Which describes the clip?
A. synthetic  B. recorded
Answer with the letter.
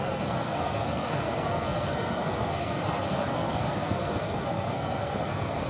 A